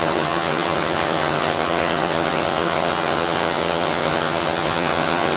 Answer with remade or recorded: remade